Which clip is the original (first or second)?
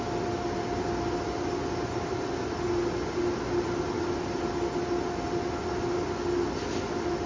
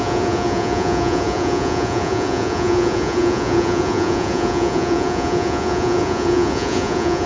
first